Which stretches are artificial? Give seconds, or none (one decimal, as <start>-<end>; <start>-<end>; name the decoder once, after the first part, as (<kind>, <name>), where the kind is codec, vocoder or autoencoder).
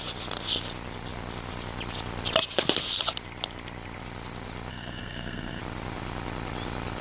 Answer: 4.7-5.6 (codec, SNAC)